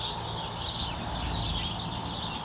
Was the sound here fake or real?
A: real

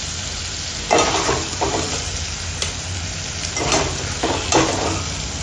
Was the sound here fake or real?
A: real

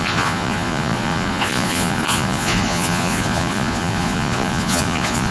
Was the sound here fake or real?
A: fake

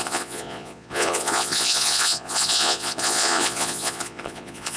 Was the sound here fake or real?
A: fake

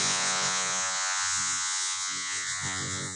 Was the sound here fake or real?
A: fake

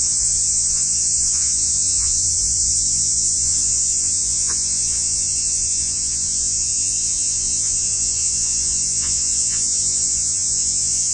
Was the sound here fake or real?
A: fake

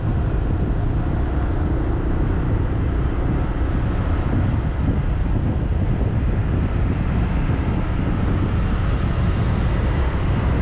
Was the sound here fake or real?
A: real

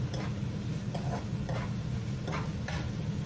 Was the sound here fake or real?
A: real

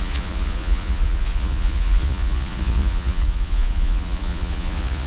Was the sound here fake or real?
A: fake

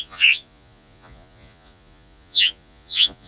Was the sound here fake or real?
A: fake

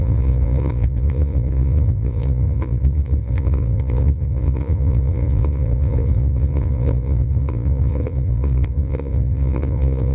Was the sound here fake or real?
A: fake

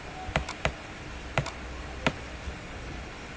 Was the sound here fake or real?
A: real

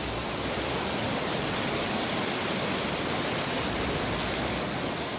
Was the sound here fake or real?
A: real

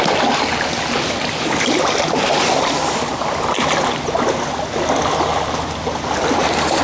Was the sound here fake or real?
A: real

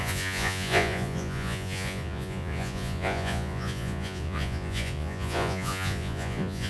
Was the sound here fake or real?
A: fake